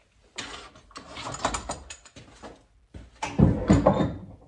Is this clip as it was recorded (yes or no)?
yes